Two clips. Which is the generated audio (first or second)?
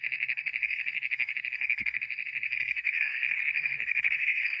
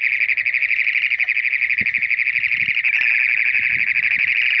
first